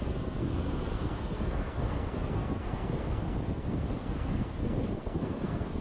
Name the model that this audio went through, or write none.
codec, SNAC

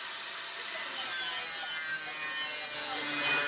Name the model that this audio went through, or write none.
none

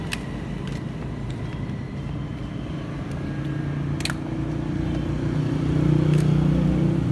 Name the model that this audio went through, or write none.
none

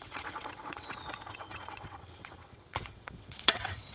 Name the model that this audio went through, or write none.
vocoder, WaveNeXt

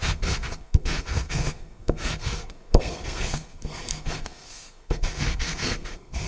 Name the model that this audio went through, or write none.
codec, SNAC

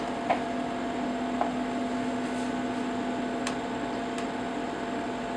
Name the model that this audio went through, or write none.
none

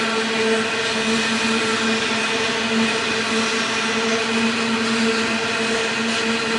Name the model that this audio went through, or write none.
none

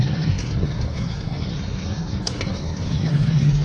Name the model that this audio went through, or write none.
codec, SNAC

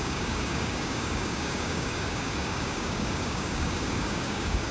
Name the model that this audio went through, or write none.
codec, DAC